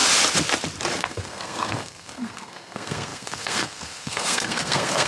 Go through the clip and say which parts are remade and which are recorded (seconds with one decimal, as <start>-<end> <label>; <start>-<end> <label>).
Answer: 0.0-1.0 recorded; 1.0-5.1 remade